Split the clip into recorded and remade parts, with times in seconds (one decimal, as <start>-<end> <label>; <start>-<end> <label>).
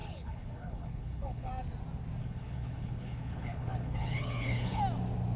0.0-1.5 remade; 1.5-2.2 recorded; 2.2-4.8 remade; 4.8-5.4 recorded